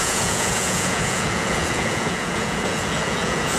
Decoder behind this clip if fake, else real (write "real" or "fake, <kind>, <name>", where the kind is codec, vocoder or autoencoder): fake, vocoder, Vocos